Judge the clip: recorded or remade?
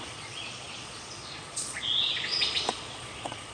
remade